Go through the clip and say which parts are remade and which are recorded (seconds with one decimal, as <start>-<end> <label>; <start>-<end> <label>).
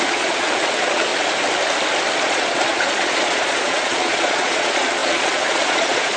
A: 0.0-1.1 remade; 1.1-2.2 recorded; 2.2-6.2 remade